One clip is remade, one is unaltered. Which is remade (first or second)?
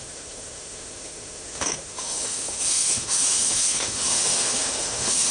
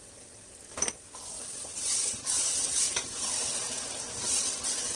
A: first